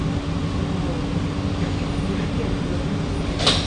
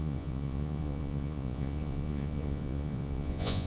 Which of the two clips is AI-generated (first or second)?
second